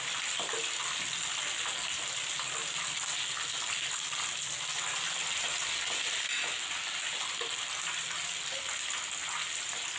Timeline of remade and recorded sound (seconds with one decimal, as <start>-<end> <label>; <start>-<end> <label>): 0.0-10.0 recorded

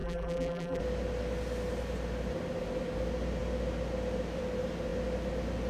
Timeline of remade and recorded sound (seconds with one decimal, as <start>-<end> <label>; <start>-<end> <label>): 0.0-0.8 remade; 0.8-5.7 recorded

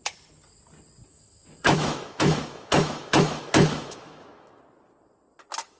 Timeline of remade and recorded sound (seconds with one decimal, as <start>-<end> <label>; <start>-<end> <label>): 0.0-1.1 recorded; 1.1-4.6 remade; 4.6-5.8 recorded

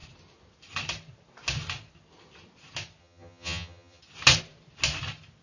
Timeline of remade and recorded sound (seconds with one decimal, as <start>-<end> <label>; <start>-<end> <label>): 0.0-3.0 recorded; 3.0-4.0 remade; 4.0-5.4 recorded

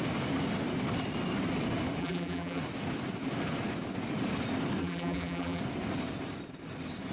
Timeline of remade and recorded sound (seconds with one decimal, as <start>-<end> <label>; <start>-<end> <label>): 0.0-2.0 recorded; 2.0-2.6 remade; 2.6-4.8 recorded; 4.8-5.6 remade; 5.6-7.1 recorded

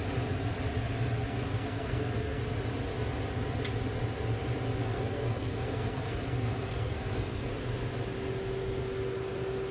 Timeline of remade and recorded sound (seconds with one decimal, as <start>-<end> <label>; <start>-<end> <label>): 0.0-1.2 recorded; 1.2-2.4 remade; 2.4-4.8 recorded; 4.8-7.5 remade; 7.5-9.7 recorded

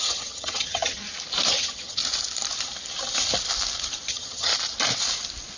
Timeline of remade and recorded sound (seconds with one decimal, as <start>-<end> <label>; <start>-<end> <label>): 0.0-1.0 remade; 1.0-1.5 recorded; 1.5-2.0 remade; 2.0-4.1 recorded; 4.1-4.5 remade; 4.5-5.6 recorded